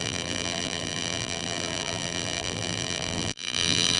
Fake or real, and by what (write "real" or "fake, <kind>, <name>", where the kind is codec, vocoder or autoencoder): fake, vocoder, BigVGAN v2